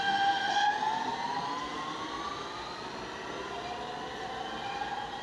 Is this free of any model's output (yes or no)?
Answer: yes